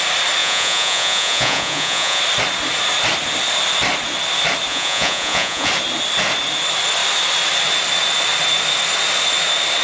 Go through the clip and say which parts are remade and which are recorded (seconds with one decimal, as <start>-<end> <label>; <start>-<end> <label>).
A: 0.0-0.4 recorded; 0.4-2.2 remade; 2.2-4.7 recorded; 4.7-5.7 remade; 5.7-9.8 recorded